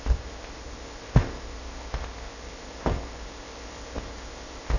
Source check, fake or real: fake